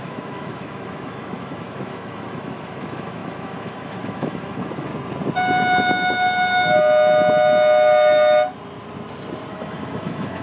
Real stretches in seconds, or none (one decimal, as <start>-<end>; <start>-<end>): 4.9-9.5